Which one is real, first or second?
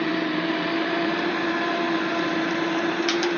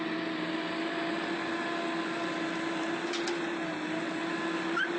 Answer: second